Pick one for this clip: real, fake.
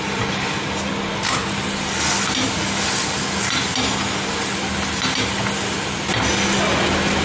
real